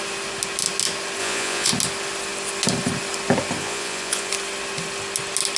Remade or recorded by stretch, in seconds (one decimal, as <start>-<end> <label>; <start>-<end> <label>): 0.0-1.2 recorded; 1.2-1.7 remade; 1.7-3.6 recorded; 3.6-4.3 remade; 4.3-5.6 recorded

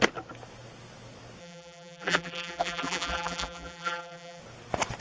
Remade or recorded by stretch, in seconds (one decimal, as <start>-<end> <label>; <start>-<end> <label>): 0.0-1.4 recorded; 1.4-4.4 remade; 4.4-5.0 recorded

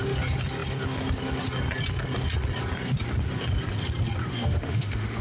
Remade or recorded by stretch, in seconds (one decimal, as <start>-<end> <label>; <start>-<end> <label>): 0.0-4.2 recorded; 4.2-5.2 remade

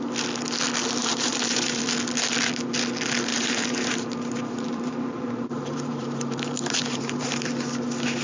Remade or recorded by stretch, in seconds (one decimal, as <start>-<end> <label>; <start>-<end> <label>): 0.0-1.0 recorded; 1.0-1.8 remade; 1.8-3.3 recorded; 3.3-7.5 remade; 7.5-8.2 recorded

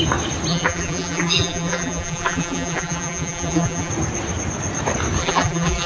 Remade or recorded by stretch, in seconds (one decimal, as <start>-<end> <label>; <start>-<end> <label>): 0.0-0.5 recorded; 0.5-3.9 remade; 3.9-5.2 recorded; 5.2-5.9 remade

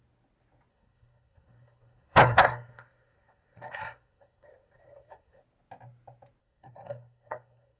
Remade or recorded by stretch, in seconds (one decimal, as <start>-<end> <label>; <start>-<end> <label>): 0.0-0.7 recorded; 0.7-5.4 remade; 5.4-6.4 recorded; 6.4-7.8 remade

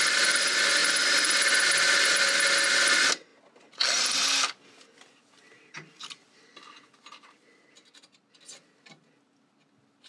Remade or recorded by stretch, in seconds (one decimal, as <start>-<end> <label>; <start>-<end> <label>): 0.0-10.1 recorded